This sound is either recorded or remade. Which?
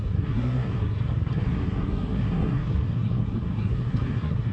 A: remade